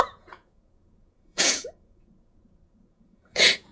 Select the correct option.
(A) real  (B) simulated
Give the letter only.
B